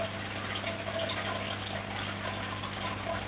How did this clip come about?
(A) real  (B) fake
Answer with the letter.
A